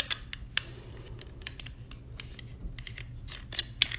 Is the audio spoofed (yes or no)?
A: no